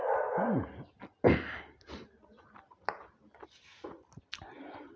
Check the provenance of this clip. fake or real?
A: real